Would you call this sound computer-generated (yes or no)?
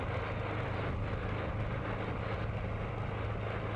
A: no